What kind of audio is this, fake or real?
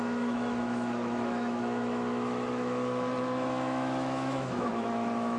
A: fake